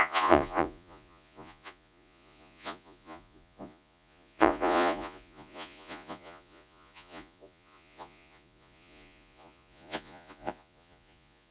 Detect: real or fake fake